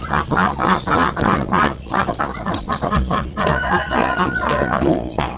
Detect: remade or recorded remade